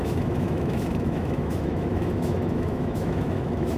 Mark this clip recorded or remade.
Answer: remade